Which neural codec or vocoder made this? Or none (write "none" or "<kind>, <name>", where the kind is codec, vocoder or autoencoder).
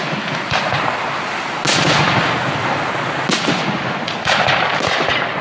none